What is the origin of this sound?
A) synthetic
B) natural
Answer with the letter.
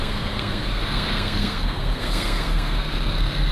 A